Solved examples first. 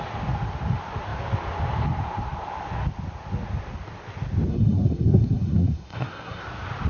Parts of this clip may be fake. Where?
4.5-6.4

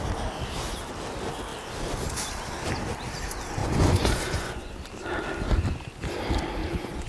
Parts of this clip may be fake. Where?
3.6-4.7; 6.6-7.1

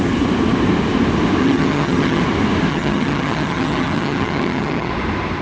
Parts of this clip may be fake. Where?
1.4-2.2; 2.7-4.9

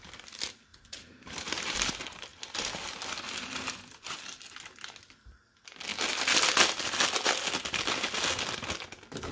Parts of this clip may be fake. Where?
0.7-1.9

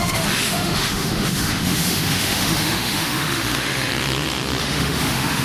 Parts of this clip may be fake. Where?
0.0-3.9; 4.6-5.4